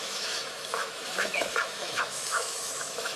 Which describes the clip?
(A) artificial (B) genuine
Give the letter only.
A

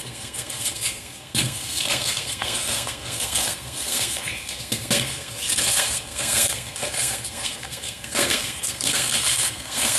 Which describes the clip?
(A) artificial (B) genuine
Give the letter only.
A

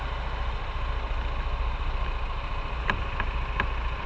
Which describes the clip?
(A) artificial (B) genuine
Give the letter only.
B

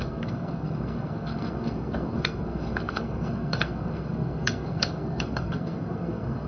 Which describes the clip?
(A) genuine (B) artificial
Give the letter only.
B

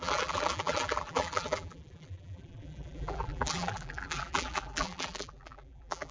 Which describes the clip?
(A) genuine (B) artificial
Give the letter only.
B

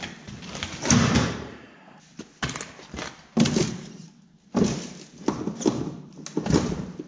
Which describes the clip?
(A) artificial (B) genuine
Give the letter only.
B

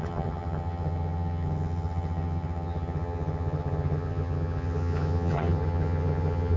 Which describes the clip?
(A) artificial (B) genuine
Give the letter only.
A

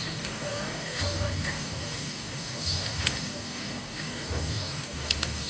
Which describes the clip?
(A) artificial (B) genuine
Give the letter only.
A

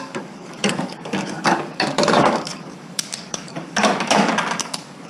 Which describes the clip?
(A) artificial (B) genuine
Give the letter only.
A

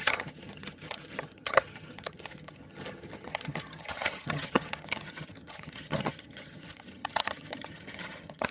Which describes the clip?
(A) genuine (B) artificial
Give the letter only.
B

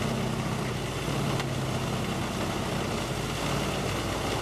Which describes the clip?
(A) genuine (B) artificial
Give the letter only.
A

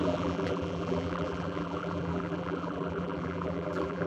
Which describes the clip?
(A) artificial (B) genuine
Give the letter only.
A